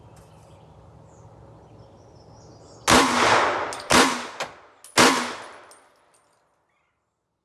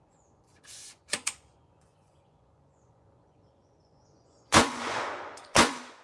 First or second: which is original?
first